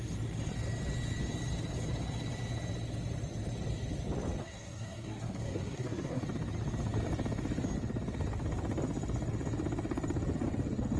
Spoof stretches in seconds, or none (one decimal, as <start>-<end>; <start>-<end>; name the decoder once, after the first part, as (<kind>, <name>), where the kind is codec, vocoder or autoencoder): 4.4-6.2 (codec, SNAC)